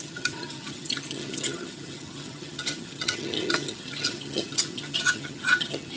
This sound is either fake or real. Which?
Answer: fake